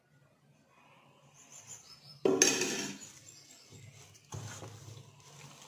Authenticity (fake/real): real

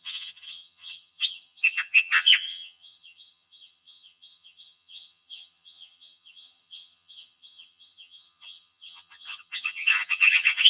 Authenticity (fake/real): fake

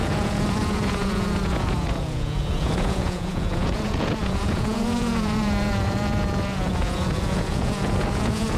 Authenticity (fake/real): fake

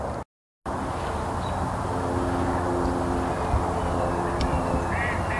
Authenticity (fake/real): real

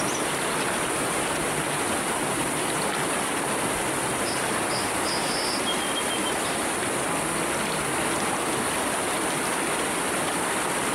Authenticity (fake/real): real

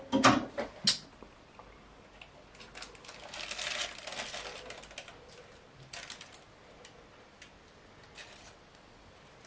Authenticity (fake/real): real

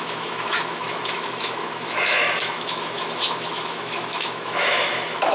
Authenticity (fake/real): fake